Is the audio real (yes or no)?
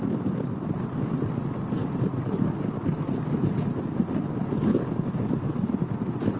yes